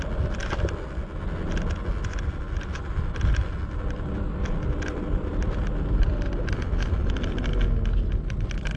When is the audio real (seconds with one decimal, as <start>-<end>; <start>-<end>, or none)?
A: 0.0-5.3; 7.4-8.8